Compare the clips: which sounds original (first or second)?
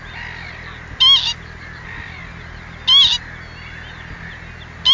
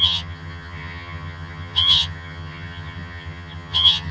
first